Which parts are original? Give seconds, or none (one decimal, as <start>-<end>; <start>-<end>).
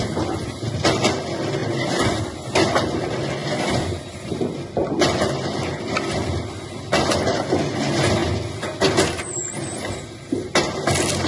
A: 0.0-3.4; 4.3-11.3